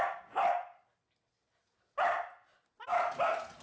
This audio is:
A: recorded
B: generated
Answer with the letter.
A